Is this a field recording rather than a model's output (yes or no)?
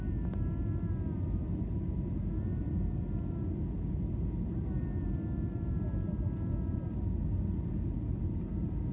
yes